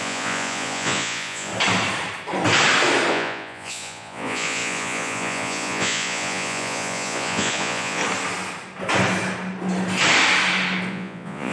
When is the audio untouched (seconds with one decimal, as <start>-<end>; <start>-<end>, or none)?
1.5-3.1; 8.0-10.9